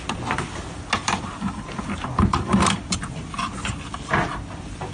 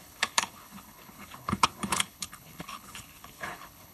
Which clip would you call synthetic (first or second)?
second